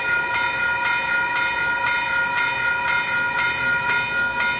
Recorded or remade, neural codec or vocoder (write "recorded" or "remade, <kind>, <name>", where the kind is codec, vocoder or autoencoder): recorded